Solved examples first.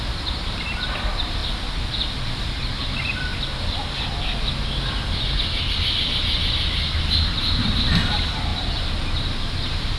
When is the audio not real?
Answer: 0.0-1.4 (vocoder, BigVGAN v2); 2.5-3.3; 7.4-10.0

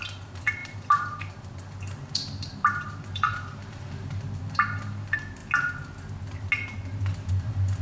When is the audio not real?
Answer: 0.0-5.4 (vocoder, BigVGAN v2); 7.3-7.8

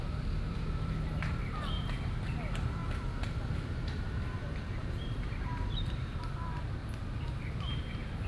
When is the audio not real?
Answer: 0.0-2.8 (vocoder, BigVGAN v2); 3.5-6.8; 7.5-8.3

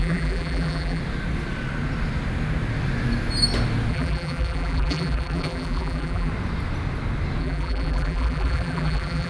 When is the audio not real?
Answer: 0.0-1.0 (vocoder, BigVGAN v2); 3.9-6.3; 7.4-9.3

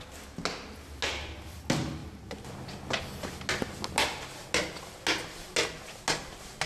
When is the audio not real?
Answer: none

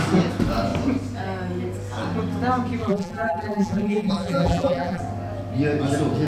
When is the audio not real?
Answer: 2.8-5.0 (vocoder, BigVGAN v2)

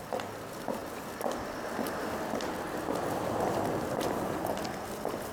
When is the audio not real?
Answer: none

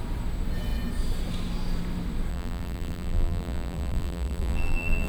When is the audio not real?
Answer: 2.3-5.1 (vocoder, BigVGAN v2)